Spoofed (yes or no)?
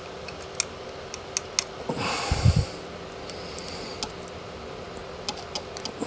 no